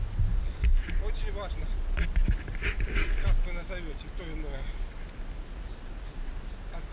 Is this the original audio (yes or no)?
yes